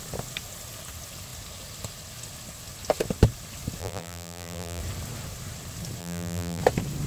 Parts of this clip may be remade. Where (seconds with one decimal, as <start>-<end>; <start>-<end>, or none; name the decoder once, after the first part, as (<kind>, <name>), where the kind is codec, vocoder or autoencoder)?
3.8-4.8 (vocoder, BigVGAN v2); 6.0-6.6